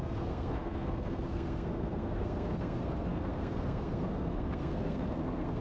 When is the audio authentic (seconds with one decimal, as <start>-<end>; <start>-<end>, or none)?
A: none